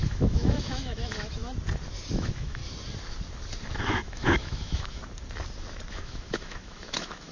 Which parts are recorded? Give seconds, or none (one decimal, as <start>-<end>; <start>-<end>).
1.4-2.1; 2.6-3.9; 5.0-5.9